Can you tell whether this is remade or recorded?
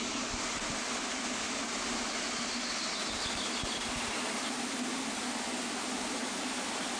recorded